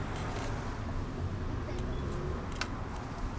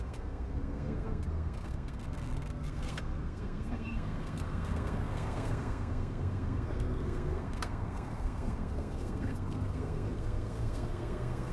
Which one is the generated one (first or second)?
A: second